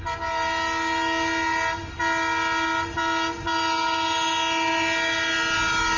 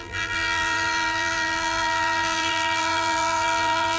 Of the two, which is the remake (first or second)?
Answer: second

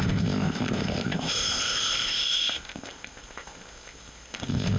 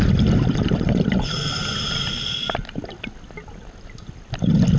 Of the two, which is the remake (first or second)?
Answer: first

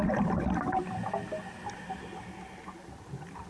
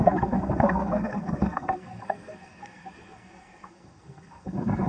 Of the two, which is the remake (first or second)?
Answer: second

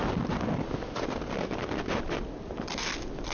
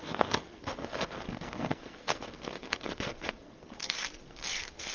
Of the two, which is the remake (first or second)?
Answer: second